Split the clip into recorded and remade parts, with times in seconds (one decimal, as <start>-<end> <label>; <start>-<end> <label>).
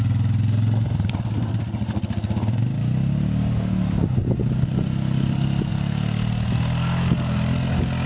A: 0.0-8.1 recorded